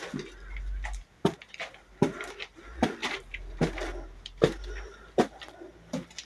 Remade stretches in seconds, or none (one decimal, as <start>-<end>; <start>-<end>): none

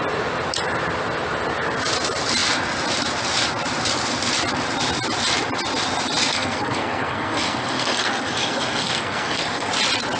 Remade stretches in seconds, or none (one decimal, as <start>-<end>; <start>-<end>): 6.3-9.7

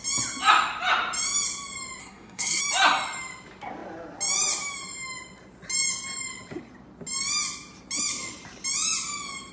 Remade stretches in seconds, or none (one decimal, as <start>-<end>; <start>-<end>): 2.0-2.6

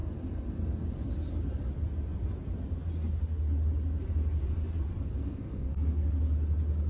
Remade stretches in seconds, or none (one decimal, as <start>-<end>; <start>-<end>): 5.2-6.1

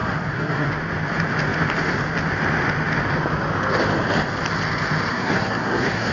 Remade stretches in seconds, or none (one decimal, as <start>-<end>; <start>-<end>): 0.0-0.7; 5.1-6.1

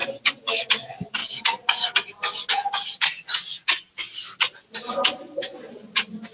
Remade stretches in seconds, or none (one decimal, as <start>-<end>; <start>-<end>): none

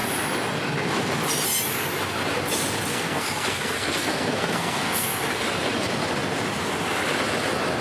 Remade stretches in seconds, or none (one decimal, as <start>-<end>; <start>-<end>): 2.9-5.2

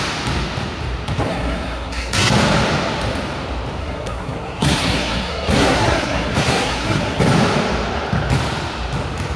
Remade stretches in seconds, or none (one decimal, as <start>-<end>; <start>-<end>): 1.3-2.3; 3.8-7.2